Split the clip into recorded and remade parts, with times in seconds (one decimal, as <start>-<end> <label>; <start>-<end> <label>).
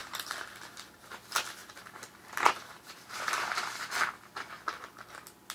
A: 0.0-1.6 recorded; 1.6-3.8 remade; 3.8-5.5 recorded